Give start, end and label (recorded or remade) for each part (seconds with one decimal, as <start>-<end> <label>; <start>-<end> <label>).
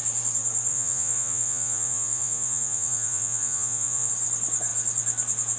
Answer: 0.0-0.7 recorded; 0.7-4.1 remade; 4.1-5.6 recorded